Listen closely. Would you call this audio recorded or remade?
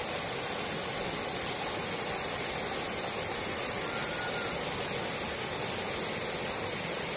recorded